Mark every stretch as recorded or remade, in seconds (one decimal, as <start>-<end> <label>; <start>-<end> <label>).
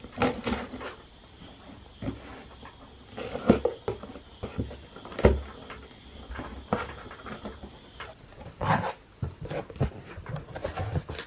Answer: 0.0-2.5 remade; 2.5-5.8 recorded; 5.8-11.3 remade